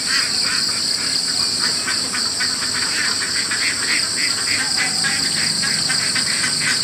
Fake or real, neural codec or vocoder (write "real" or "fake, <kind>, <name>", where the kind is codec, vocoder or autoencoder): real